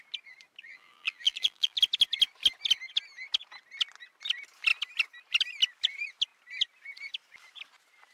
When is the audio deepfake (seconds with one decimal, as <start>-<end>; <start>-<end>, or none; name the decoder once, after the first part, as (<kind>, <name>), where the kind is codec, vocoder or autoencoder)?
0.6-1.8 (vocoder, BigVGAN v2)